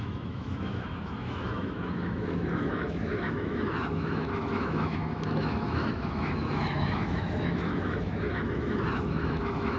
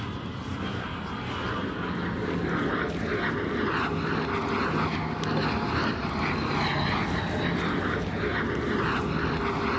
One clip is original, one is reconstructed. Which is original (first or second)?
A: second